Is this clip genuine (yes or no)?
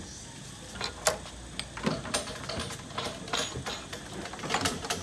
yes